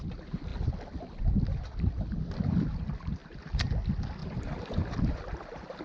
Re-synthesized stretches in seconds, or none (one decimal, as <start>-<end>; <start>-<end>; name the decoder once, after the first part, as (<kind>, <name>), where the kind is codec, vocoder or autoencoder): 3.2-3.7 (vocoder, BigVGAN v2); 4.2-5.8